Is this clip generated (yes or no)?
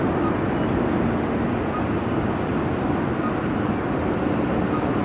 no